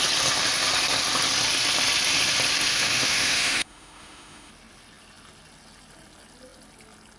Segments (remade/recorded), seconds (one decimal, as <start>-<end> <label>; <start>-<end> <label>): 0.0-2.7 recorded; 2.7-4.5 remade; 4.5-7.2 recorded

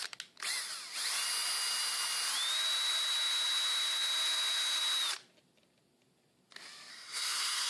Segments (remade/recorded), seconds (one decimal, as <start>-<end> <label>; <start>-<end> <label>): 0.0-6.9 recorded; 6.9-7.7 remade

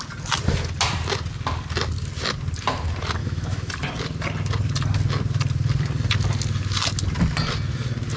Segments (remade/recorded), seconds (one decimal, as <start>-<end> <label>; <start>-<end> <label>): 0.0-3.2 recorded; 3.2-3.7 remade; 3.7-8.2 recorded

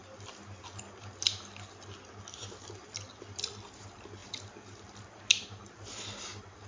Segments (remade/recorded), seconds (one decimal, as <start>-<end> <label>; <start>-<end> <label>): 0.0-6.7 recorded

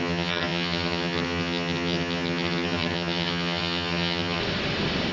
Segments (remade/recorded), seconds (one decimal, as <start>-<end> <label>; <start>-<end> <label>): 0.0-4.4 remade; 4.4-5.1 recorded